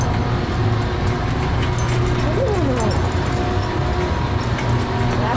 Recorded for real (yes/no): yes